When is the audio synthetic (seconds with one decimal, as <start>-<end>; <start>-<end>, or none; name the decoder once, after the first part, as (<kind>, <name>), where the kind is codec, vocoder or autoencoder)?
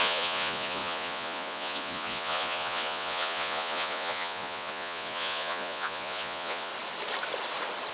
0.0-6.7 (vocoder, Vocos)